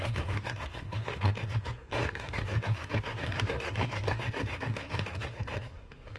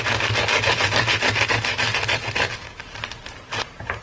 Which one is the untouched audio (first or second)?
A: second